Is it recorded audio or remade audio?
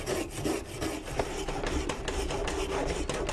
recorded